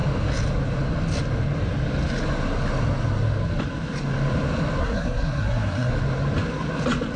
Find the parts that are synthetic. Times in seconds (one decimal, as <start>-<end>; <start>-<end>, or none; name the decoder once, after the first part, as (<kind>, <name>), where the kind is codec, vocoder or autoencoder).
4.8-5.9 (codec, SNAC)